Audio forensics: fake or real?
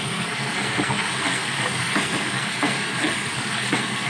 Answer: fake